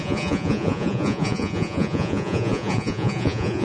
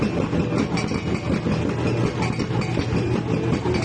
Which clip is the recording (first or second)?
second